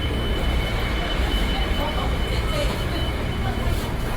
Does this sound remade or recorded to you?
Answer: remade